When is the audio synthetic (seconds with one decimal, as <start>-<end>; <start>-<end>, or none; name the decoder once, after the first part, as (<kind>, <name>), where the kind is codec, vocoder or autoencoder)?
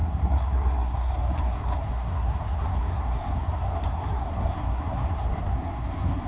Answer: 0.0-6.3 (codec, SNAC)